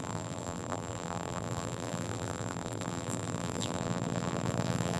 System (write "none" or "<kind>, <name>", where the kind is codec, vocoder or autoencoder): vocoder, BigVGAN v2